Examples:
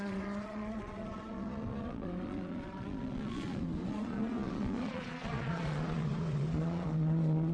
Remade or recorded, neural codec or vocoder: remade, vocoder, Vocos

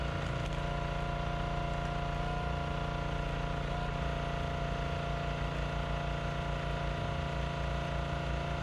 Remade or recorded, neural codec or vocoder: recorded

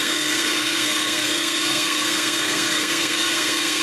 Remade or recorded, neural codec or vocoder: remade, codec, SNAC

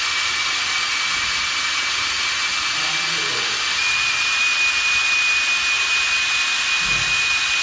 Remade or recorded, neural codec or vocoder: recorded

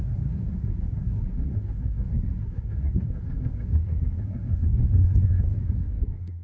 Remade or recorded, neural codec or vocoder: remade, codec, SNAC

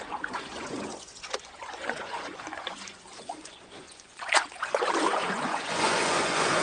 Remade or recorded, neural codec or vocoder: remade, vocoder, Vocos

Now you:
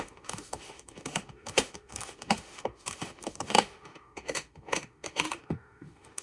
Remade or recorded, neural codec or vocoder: remade, autoencoder, DAC-VAE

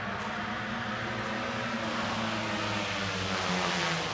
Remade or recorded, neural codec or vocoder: recorded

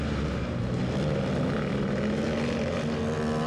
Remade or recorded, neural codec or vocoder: recorded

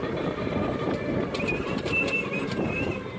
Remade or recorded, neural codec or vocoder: remade, vocoder, BigVGAN v2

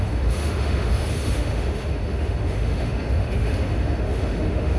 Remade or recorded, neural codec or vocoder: remade, autoencoder, DAC-VAE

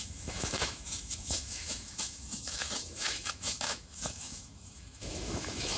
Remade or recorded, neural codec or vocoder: remade, autoencoder, DAC-VAE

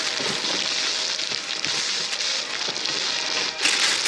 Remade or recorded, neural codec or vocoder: recorded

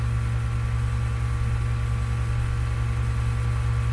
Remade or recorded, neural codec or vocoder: recorded